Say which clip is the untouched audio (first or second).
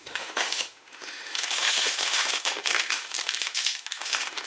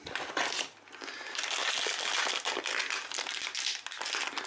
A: second